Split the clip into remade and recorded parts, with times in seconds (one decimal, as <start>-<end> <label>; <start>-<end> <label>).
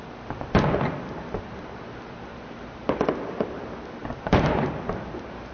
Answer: 0.0-5.5 recorded